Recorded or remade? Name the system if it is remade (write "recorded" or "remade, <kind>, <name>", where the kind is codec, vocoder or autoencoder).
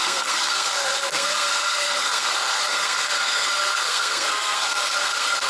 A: remade, codec, SNAC